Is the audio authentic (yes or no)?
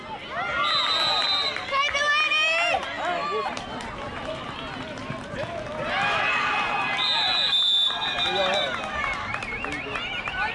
yes